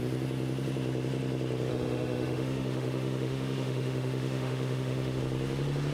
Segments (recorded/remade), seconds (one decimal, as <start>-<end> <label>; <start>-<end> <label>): 0.0-1.7 recorded; 1.7-5.2 remade; 5.2-5.9 recorded